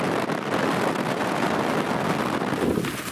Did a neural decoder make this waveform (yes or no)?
no